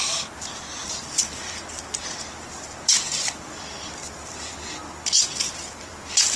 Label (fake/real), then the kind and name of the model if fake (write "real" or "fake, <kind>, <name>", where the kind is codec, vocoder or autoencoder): real